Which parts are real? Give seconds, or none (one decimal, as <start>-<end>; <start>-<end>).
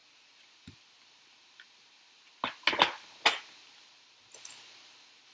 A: 0.0-5.3